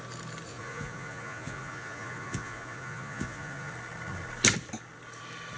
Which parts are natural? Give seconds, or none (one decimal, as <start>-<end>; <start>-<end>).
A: 0.0-0.5; 3.7-5.6